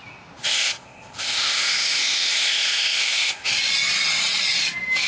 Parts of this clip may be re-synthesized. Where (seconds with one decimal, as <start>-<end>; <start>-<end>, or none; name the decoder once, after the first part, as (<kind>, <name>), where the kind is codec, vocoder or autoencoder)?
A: 0.4-3.5 (codec, ZipCodec)